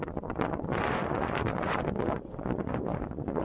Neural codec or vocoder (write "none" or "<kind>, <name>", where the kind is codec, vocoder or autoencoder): vocoder, Vocos